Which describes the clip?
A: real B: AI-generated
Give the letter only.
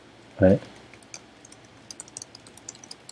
A